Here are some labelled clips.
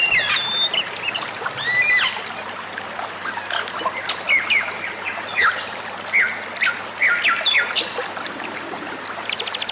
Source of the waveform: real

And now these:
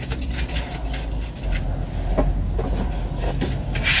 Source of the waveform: real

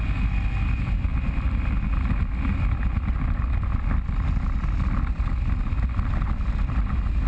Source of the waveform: real